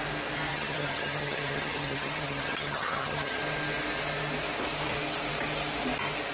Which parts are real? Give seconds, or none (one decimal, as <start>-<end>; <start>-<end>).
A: 0.0-0.5; 3.4-6.3